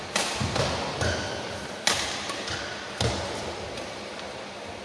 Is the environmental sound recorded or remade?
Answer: recorded